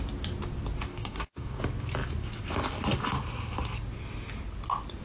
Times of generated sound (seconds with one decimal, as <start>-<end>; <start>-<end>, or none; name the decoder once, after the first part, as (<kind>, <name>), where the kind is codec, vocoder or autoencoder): 0.9-1.6 (codec, DAC)